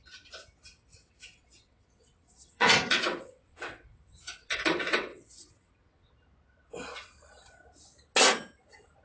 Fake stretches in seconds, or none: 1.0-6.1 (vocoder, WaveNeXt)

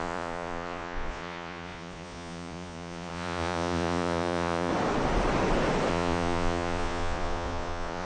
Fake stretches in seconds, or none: 0.0-4.7 (vocoder, Vocos); 5.9-8.1

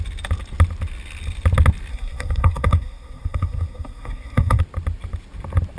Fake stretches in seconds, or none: 1.9-4.6 (codec, SNAC)

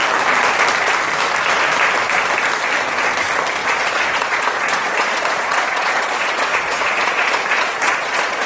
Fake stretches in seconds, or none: 3.6-8.5 (vocoder, Vocos)

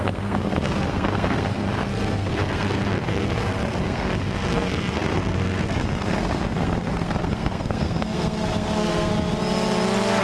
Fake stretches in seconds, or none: 0.0-9.1 (codec, SNAC)

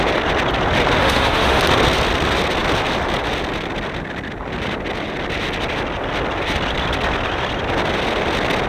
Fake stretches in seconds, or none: 1.0-1.6 (autoencoder, DAC-VAE)